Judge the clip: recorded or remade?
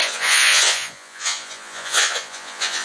remade